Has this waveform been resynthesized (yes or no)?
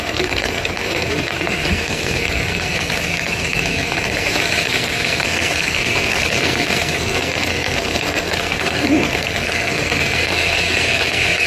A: yes